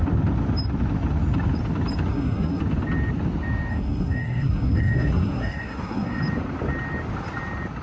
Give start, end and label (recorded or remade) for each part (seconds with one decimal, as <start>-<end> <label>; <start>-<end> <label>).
0.0-2.1 recorded; 2.1-2.6 remade; 2.6-3.7 recorded; 3.7-6.2 remade; 6.2-7.8 recorded